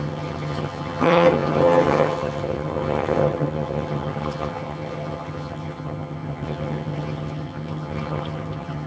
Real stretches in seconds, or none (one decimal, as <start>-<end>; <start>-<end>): none